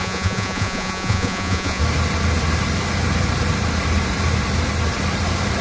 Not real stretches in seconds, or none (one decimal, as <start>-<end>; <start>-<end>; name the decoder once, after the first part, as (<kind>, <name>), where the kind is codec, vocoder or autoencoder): 0.0-1.8 (vocoder, Vocos)